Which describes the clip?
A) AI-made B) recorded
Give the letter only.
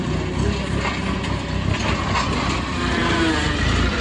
B